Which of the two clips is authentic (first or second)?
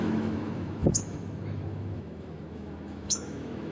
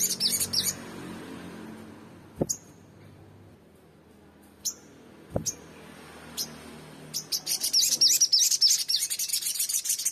second